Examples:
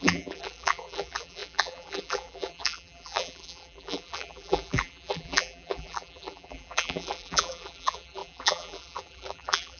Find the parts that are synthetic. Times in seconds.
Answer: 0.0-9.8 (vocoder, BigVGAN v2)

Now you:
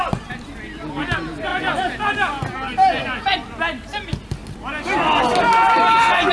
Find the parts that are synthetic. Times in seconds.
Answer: none

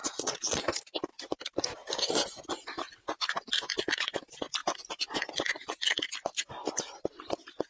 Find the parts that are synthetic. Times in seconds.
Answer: 0.0-0.6 (vocoder, Vocos)

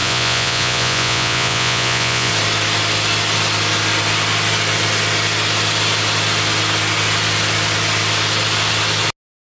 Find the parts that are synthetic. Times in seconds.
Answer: 0.0-2.3 (vocoder, Vocos)

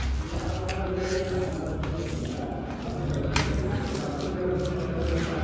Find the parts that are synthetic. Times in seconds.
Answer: 0.7-1.2 (vocoder, Vocos); 2.0-2.7

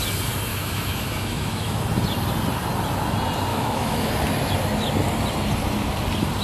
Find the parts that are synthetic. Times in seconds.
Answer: 0.5-1.8 (autoencoder, DAC-VAE); 3.5-4.1